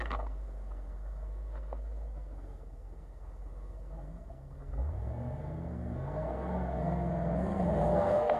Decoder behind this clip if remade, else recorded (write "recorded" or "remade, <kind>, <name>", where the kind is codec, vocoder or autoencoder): remade, codec, SNAC